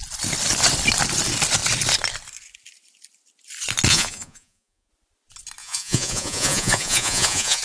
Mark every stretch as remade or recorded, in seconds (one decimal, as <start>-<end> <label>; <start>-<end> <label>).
0.0-3.9 recorded; 3.9-4.9 remade; 4.9-5.6 recorded; 5.6-7.6 remade